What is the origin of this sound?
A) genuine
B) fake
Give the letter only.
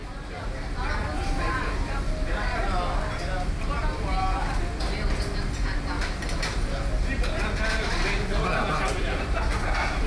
A